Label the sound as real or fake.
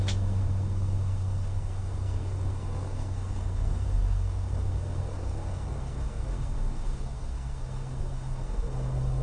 fake